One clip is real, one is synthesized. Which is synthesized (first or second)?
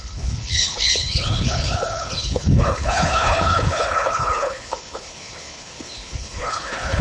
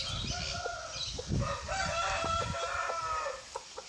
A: first